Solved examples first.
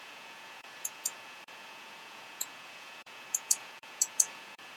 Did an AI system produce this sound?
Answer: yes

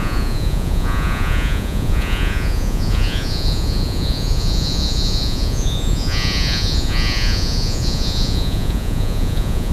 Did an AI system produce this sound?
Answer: yes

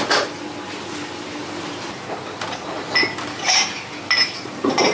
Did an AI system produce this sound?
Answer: no